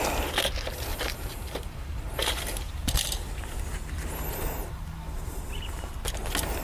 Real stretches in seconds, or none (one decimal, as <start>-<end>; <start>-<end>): 0.0-0.9; 3.3-4.6; 5.4-6.6